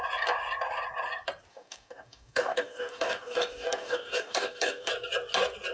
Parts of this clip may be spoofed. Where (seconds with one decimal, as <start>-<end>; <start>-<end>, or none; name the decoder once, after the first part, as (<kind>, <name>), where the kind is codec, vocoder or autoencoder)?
1.5-4.9 (codec, DAC)